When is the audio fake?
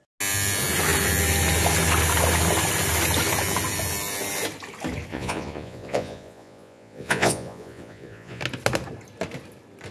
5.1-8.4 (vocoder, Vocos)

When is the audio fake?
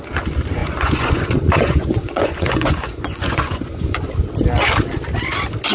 0.6-4.0 (vocoder, Vocos)